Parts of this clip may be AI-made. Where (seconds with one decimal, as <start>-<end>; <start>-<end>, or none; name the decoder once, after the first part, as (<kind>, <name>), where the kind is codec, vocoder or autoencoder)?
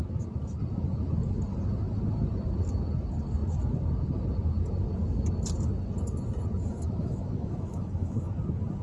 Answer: 6.6-8.3 (autoencoder, DAC-VAE)